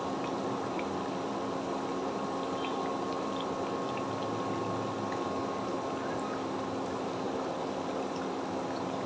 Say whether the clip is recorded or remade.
recorded